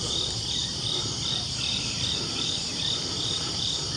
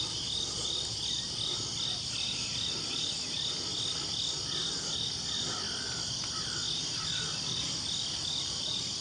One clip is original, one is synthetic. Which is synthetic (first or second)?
first